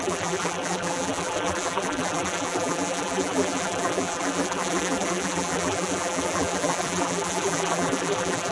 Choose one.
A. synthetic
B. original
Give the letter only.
A